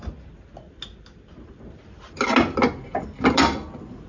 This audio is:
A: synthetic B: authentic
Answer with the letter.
B